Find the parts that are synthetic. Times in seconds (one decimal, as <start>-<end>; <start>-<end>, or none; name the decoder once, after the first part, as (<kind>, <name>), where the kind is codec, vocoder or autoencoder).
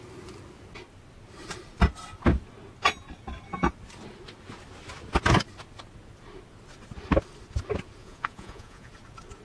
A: 8.0-8.9 (vocoder, Vocos)